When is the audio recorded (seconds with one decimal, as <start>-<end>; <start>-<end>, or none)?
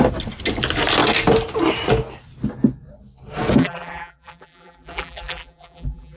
0.0-3.6